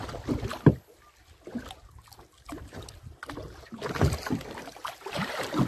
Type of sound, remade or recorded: recorded